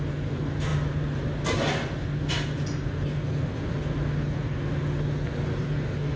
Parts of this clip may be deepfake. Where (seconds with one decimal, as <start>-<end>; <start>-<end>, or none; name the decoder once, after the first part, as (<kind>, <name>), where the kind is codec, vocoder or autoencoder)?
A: none